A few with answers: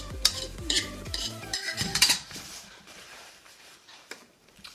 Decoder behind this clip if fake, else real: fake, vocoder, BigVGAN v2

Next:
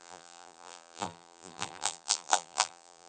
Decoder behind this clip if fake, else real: fake, vocoder, BigVGAN v2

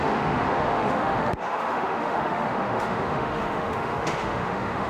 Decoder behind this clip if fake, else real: fake, autoencoder, DAC-VAE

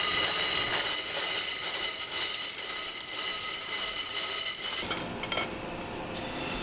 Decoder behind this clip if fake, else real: real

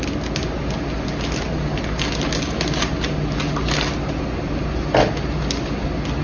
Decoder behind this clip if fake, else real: real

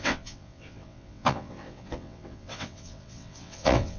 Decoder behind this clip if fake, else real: fake, vocoder, WaveNeXt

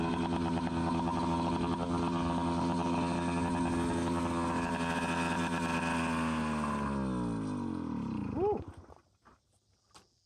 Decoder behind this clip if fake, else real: real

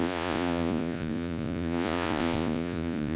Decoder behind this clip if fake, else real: fake, vocoder, Vocos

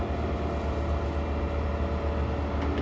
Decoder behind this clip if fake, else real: real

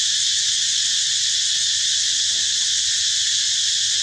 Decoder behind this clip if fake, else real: real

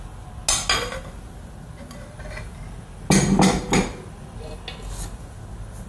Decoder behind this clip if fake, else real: real